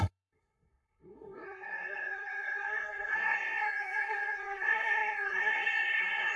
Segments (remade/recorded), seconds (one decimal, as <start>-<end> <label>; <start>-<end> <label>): 0.0-6.4 remade